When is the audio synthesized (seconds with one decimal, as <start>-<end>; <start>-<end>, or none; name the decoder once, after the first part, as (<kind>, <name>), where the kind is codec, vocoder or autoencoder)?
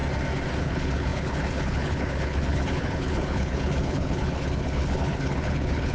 0.6-5.9 (codec, HILCodec)